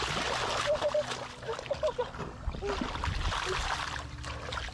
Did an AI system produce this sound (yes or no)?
no